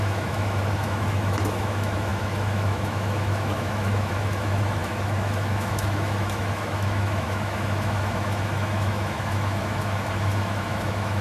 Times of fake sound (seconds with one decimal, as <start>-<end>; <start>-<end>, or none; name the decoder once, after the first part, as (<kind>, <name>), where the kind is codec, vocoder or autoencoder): 0.0-11.2 (autoencoder, DAC-VAE)